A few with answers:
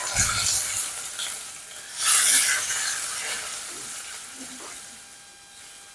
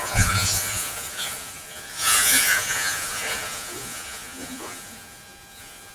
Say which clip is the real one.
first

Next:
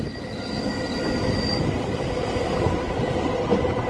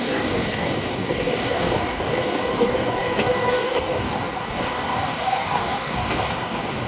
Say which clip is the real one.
first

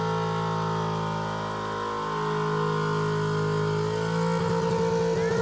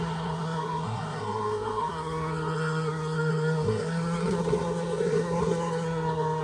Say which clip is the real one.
first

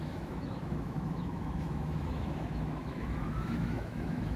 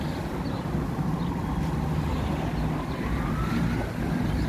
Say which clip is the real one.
second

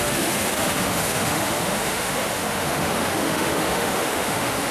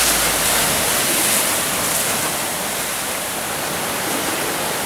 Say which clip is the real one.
second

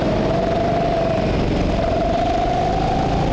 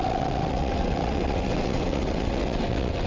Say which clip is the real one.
first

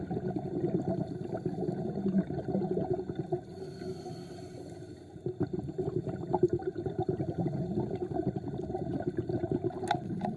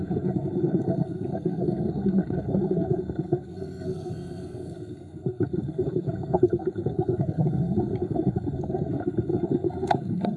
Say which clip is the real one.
first